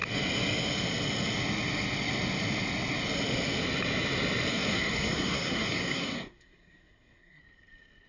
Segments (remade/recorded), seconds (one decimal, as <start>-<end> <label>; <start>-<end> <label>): 0.0-4.5 recorded; 4.5-7.4 remade; 7.4-8.1 recorded